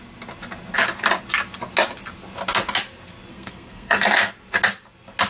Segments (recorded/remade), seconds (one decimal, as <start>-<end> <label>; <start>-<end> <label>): 0.0-3.3 recorded; 3.3-4.3 remade; 4.3-5.3 recorded